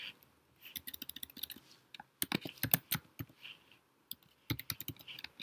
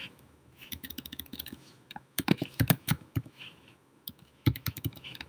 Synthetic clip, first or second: second